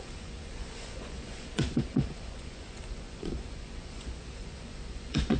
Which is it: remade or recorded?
remade